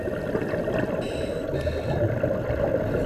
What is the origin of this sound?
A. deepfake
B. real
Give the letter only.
B